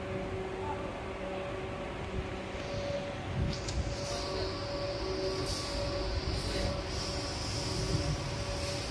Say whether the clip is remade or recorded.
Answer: recorded